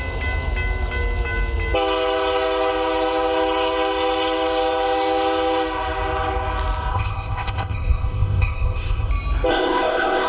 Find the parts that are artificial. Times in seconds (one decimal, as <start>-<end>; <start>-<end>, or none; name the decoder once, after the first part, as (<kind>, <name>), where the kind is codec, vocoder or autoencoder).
6.9-9.1 (codec, ZipCodec); 9.5-10.3